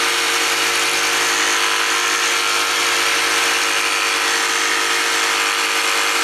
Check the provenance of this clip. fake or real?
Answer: real